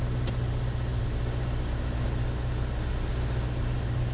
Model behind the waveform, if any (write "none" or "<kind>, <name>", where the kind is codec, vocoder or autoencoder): none